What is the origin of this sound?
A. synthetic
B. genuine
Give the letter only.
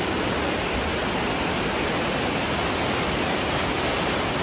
B